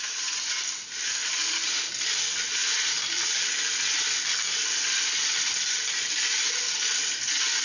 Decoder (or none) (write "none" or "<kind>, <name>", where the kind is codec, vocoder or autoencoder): none